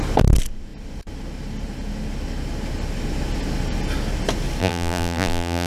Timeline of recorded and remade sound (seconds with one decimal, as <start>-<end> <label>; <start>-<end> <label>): 0.0-4.6 recorded; 4.6-5.7 remade

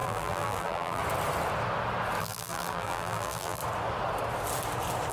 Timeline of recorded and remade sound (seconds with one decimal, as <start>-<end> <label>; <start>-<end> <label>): 0.0-1.0 remade; 1.0-2.2 recorded; 2.2-3.6 remade; 3.6-5.1 recorded

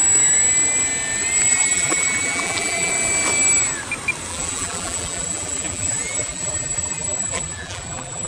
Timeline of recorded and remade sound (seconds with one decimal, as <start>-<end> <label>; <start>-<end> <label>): 0.0-1.5 recorded; 1.5-2.9 remade; 2.9-4.3 recorded; 4.3-8.3 remade

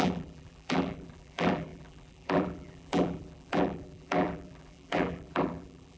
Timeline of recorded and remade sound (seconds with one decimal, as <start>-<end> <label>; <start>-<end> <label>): 0.0-6.0 remade

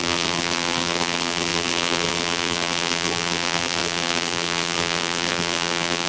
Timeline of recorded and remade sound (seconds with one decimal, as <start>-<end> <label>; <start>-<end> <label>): 0.0-6.1 remade

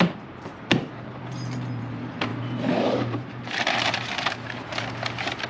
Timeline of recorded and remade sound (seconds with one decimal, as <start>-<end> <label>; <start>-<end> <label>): 0.0-5.5 remade

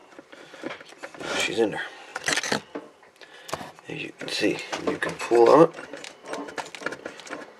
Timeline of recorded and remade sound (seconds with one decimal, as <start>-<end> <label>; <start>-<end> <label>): 0.0-0.7 remade; 0.7-7.6 recorded